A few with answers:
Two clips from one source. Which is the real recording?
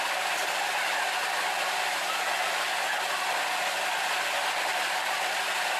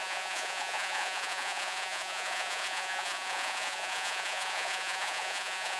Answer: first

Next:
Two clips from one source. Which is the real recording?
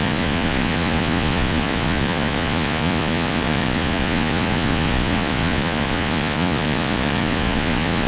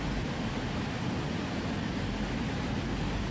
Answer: second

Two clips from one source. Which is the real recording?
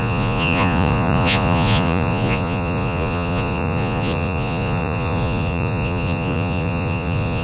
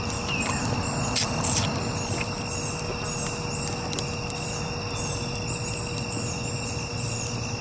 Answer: second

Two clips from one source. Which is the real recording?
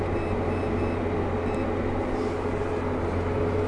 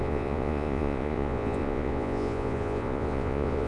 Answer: first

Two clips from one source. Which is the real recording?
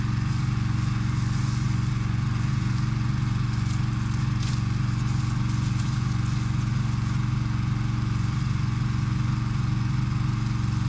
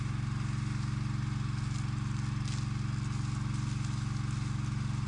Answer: second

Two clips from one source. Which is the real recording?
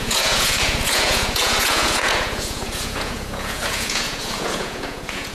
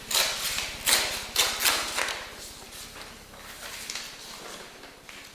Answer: second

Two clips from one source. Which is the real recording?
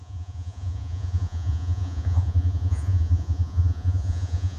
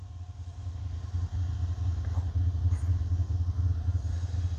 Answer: second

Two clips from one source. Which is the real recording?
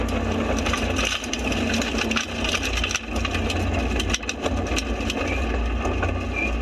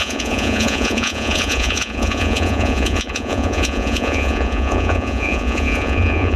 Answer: first